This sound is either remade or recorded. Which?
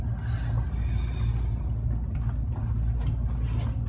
recorded